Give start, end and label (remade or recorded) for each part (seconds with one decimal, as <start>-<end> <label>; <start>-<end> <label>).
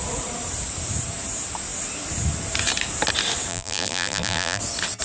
0.0-3.5 recorded; 3.5-4.6 remade; 4.6-5.0 recorded